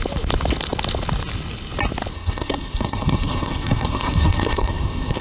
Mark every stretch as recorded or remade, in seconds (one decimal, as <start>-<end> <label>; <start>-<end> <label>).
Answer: 0.0-2.1 recorded; 2.1-5.2 remade